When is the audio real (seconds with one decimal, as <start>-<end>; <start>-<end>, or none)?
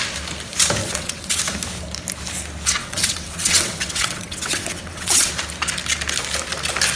0.0-0.8; 1.4-2.8; 5.3-7.0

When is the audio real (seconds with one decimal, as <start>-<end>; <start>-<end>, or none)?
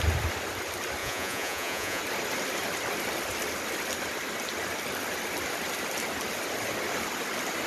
0.0-1.0; 2.0-7.7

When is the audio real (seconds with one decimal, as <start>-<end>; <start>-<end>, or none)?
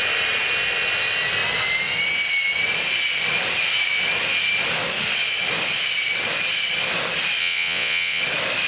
0.0-7.4; 8.2-8.7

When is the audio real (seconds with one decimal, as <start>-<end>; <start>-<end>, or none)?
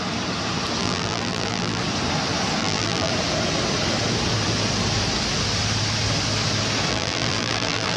0.0-0.8; 1.8-2.6; 3.1-6.9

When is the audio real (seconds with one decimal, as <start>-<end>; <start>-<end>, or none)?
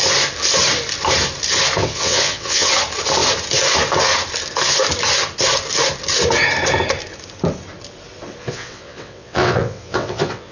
0.0-1.8; 2.7-8.4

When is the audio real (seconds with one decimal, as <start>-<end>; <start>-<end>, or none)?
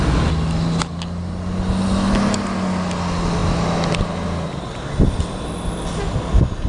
0.0-6.7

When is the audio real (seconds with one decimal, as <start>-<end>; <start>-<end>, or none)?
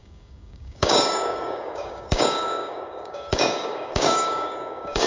none